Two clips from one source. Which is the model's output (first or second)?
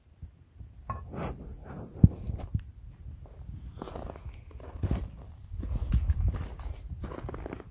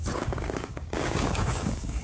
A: second